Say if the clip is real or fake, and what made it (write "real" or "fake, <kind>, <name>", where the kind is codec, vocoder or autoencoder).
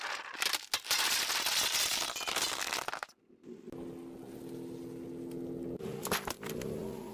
real